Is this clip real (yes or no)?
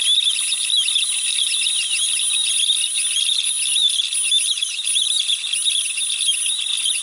yes